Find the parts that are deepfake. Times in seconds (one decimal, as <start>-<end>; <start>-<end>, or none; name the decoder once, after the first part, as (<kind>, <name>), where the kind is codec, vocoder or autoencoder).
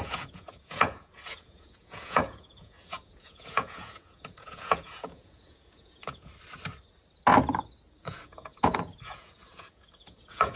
0.0-6.3 (vocoder, Vocos); 8.0-10.6